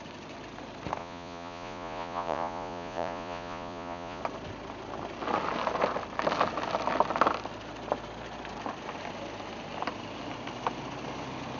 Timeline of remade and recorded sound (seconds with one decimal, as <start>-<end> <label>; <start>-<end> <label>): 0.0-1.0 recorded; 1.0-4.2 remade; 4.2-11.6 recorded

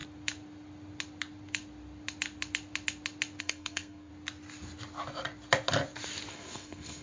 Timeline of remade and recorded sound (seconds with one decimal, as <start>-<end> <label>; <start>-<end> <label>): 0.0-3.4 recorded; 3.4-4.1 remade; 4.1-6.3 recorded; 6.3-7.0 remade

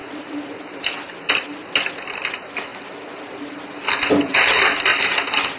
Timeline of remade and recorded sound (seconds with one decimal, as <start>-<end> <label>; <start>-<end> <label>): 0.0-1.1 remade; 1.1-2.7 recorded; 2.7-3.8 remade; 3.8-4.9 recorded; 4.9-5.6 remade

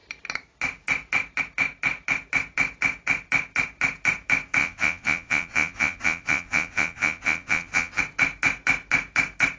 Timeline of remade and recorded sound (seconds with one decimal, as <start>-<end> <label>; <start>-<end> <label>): 0.0-4.6 recorded; 4.6-8.0 remade; 8.0-9.6 recorded